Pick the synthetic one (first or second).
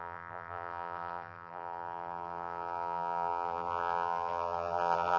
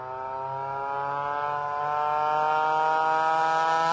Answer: first